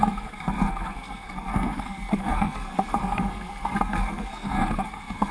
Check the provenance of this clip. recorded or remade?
remade